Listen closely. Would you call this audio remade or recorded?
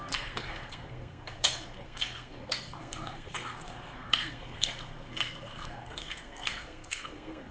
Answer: remade